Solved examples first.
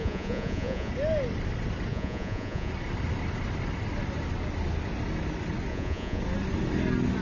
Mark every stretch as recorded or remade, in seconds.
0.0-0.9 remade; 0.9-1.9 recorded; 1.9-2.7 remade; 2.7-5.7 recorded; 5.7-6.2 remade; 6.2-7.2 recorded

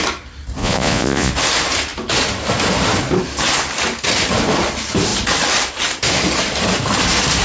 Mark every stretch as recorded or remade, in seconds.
0.0-0.6 recorded; 0.6-1.3 remade; 1.3-7.4 recorded

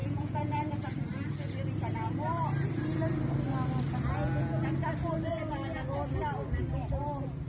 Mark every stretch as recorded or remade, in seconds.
0.0-0.7 remade; 0.7-7.5 recorded

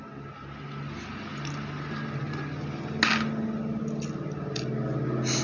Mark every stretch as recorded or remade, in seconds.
0.0-5.4 recorded

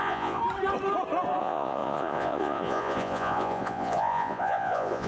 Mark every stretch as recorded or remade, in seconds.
0.0-0.4 remade; 0.4-1.4 recorded; 1.4-5.1 remade

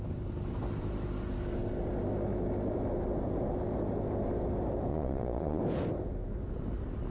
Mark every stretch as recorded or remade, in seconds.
0.0-4.9 recorded; 4.9-5.6 remade; 5.6-7.1 recorded

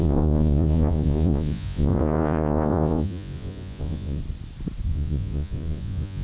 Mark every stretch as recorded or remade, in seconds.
0.0-4.2 remade; 4.2-4.9 recorded; 4.9-6.2 remade